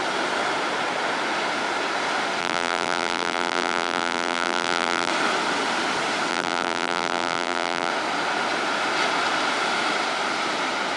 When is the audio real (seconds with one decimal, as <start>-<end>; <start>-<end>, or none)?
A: 0.0-2.4; 5.1-6.3; 7.9-11.0